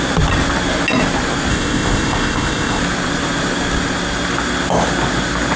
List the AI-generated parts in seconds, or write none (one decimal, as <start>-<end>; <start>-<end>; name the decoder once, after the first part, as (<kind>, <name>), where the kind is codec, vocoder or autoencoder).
1.5-2.8 (codec, ZipCodec)